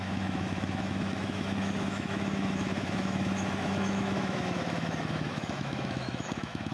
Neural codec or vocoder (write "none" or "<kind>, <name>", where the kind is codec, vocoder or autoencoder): autoencoder, DAC-VAE